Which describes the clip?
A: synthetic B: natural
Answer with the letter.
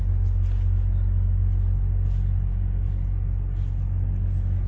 B